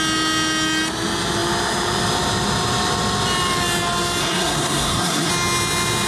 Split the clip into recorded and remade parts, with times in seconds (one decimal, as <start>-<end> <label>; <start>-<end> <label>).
0.0-4.2 recorded; 4.2-5.3 remade; 5.3-6.1 recorded